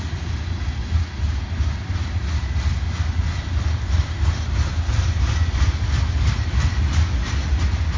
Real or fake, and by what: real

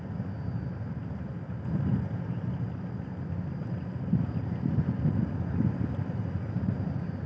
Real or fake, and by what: real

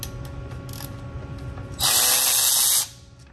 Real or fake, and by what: real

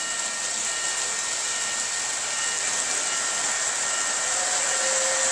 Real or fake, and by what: real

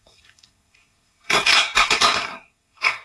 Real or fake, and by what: fake, codec, SNAC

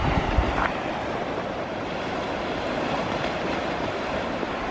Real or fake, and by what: fake, vocoder, BigVGAN v2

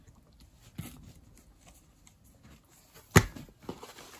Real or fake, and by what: real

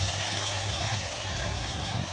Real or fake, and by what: fake, codec, SNAC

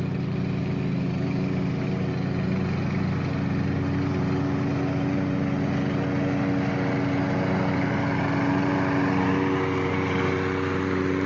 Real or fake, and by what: real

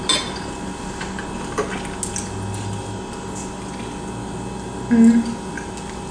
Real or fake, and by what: real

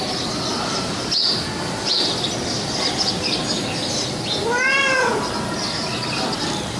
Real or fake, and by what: real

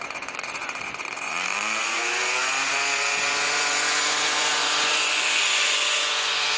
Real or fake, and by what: fake, vocoder, Vocos